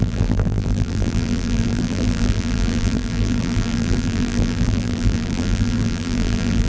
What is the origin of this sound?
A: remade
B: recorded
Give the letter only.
A